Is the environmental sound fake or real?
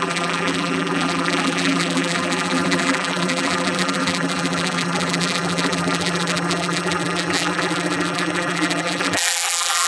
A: fake